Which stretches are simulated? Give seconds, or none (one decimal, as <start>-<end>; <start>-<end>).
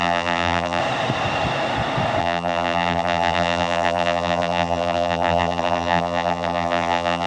0.0-0.8; 2.2-7.3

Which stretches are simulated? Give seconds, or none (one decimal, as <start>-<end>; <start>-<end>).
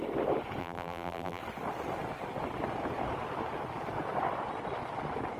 0.6-1.4